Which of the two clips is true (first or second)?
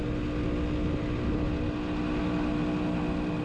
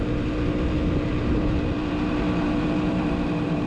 first